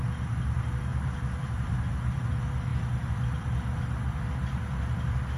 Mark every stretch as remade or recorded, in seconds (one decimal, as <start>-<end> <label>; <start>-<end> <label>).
0.0-0.9 recorded; 0.9-1.9 remade; 1.9-5.4 recorded